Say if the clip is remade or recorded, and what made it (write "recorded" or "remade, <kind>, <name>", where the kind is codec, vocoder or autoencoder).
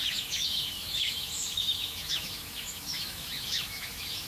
remade, autoencoder, DAC-VAE